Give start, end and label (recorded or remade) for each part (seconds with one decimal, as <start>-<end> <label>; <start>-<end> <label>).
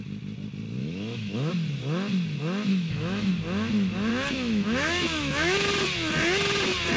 0.0-0.8 recorded; 0.8-1.5 remade; 1.5-2.7 recorded; 2.7-3.3 remade; 3.3-4.1 recorded; 4.1-5.7 remade; 5.7-7.0 recorded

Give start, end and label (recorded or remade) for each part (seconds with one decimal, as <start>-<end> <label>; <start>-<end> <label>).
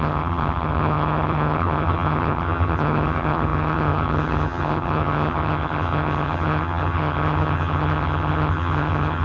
0.0-9.2 remade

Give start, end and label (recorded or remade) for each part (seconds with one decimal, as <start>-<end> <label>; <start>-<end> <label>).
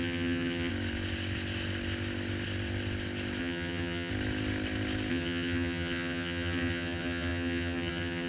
0.0-0.7 remade; 0.7-3.4 recorded; 3.4-4.1 remade; 4.1-5.1 recorded; 5.1-8.3 remade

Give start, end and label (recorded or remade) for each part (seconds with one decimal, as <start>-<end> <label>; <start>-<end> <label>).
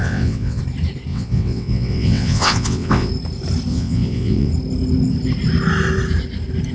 0.0-0.6 remade; 0.6-1.1 recorded; 1.1-3.1 remade; 3.1-3.7 recorded; 3.7-4.5 remade; 4.5-6.7 recorded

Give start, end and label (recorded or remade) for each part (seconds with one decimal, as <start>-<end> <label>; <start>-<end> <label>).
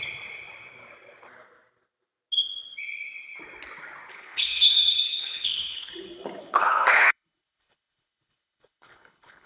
0.0-4.1 recorded; 4.1-5.9 remade; 5.9-6.4 recorded; 6.4-9.5 remade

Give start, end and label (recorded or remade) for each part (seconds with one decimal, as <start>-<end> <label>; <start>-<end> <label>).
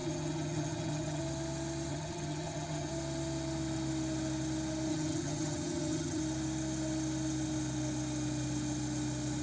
0.0-1.2 remade; 1.2-1.9 recorded; 1.9-2.9 remade; 2.9-4.9 recorded; 4.9-6.2 remade; 6.2-9.4 recorded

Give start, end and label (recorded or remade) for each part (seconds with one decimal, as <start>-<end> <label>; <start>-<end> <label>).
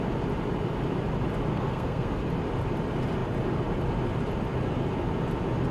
0.0-1.5 recorded; 1.5-2.2 remade; 2.2-5.7 recorded